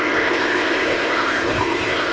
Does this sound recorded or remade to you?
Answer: remade